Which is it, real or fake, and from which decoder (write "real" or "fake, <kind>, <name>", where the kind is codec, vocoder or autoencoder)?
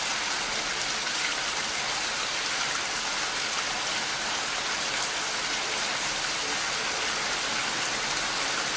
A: real